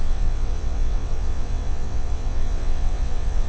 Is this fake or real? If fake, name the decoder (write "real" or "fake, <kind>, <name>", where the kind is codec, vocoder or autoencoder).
fake, vocoder, WaveNeXt